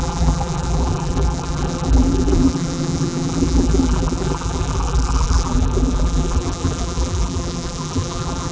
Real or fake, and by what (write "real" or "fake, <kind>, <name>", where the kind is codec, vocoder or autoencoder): fake, vocoder, BigVGAN v2